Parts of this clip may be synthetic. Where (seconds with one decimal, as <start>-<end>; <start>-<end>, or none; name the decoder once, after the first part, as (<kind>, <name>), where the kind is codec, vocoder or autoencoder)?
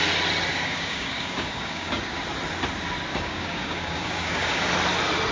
0.5-2.2 (codec, DAC); 3.1-4.7